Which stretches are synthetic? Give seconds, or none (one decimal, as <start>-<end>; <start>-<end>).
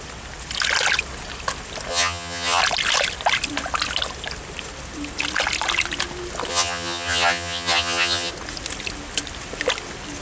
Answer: 1.9-2.6; 6.5-8.3